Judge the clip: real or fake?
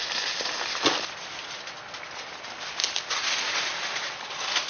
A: real